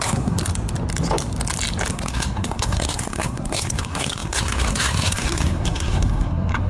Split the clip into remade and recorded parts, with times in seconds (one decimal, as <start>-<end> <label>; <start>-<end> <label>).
0.0-0.4 remade; 0.4-1.9 recorded; 1.9-6.7 remade